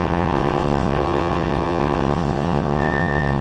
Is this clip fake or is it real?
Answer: fake